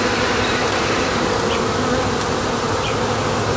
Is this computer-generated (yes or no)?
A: no